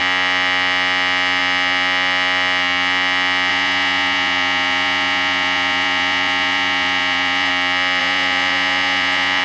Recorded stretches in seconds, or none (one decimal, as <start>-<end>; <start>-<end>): 0.0-3.5; 7.5-8.0